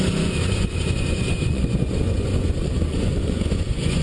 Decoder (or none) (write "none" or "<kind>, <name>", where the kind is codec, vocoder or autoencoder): vocoder, Vocos